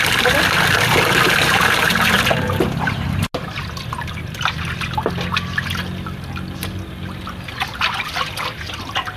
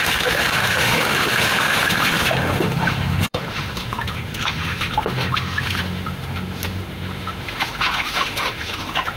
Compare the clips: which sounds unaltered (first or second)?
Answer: first